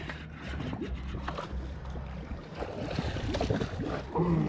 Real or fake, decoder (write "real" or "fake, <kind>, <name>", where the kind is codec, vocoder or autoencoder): real